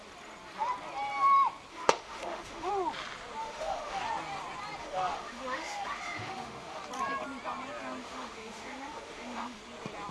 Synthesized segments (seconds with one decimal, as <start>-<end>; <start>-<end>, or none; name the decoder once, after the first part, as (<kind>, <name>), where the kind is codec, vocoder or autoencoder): 1.7-2.7 (autoencoder, DAC-VAE); 3.4-4.0; 4.8-6.8; 8.0-9.6